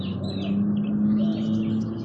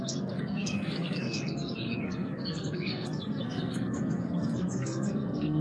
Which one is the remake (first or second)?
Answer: second